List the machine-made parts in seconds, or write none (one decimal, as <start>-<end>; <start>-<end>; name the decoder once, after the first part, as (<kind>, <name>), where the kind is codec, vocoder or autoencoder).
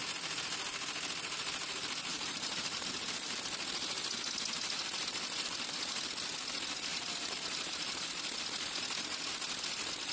2.1-3.0 (vocoder, BigVGAN v2)